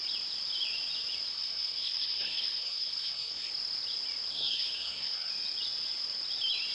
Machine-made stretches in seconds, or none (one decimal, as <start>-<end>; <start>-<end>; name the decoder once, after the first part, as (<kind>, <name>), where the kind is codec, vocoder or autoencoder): 1.3-3.5 (codec, SNAC); 4.3-5.3